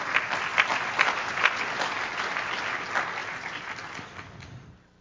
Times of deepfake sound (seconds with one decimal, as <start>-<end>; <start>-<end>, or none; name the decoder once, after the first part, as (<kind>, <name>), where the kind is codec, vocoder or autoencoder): none